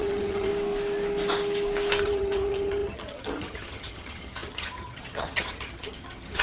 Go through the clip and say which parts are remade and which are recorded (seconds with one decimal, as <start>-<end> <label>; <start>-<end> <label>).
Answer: 0.0-0.5 remade; 0.5-2.0 recorded; 2.0-6.4 remade